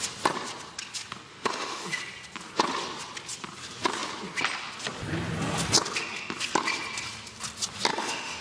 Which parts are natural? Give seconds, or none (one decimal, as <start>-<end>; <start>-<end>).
0.0-1.3; 2.0-7.9